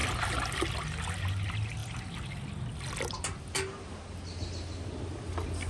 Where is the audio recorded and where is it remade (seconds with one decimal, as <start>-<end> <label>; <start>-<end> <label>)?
0.0-5.7 recorded